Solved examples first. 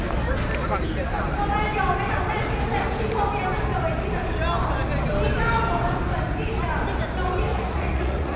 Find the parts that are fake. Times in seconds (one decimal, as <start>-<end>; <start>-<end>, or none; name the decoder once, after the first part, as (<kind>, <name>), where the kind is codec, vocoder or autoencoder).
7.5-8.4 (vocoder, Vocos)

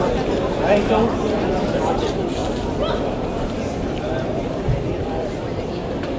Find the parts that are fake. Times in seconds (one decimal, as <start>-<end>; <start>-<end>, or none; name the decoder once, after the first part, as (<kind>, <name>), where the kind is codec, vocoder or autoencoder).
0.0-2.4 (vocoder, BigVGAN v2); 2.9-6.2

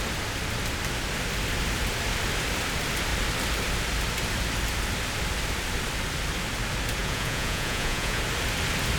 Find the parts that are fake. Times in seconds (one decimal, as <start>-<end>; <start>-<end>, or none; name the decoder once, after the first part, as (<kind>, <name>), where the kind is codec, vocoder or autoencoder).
7.0-8.2 (vocoder, Vocos)

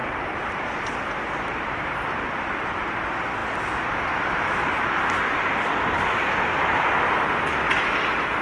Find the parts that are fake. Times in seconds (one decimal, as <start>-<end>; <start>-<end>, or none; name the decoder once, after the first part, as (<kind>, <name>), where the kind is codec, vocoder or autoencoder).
none

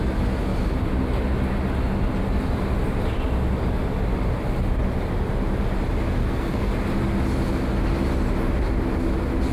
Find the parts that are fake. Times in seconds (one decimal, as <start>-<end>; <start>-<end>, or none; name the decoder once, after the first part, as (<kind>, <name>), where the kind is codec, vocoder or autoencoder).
6.2-6.7 (codec, SNAC)